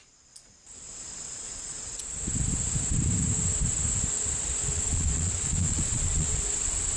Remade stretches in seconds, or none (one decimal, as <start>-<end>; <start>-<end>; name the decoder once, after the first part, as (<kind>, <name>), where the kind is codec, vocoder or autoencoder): 1.2-1.9 (vocoder, Vocos); 4.7-6.4